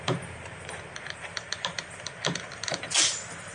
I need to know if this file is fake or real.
real